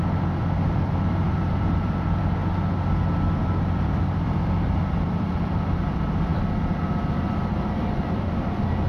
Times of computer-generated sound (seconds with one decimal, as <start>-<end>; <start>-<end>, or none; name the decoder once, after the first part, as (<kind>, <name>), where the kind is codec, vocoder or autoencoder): 0.0-2.4 (vocoder, BigVGAN v2); 3.4-8.9